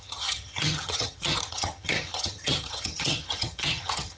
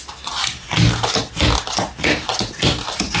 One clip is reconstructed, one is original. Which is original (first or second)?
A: second